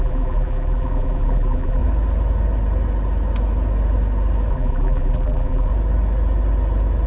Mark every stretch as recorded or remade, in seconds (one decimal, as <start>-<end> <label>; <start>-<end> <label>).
0.0-1.8 remade; 1.8-4.5 recorded; 4.5-5.7 remade; 5.7-7.1 recorded